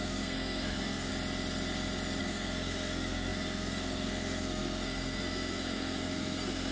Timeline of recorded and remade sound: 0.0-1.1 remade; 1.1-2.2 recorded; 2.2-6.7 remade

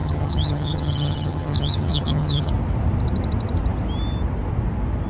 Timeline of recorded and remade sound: 0.0-2.5 remade; 2.5-5.1 recorded

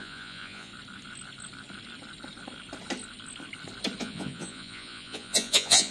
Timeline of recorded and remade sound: 0.0-0.7 remade; 0.7-4.0 recorded; 4.0-5.9 remade

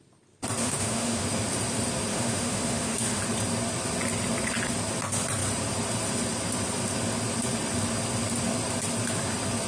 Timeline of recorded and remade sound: 0.0-0.6 recorded; 0.6-1.2 remade; 1.2-2.1 recorded; 2.1-3.2 remade; 3.2-9.7 recorded

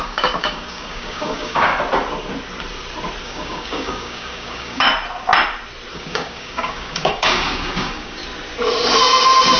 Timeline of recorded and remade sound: 0.0-1.7 remade; 1.7-3.2 recorded; 3.2-4.9 remade; 4.9-5.9 recorded; 5.9-8.2 remade; 8.2-9.6 recorded

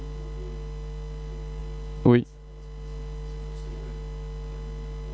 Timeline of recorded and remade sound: 0.0-5.1 recorded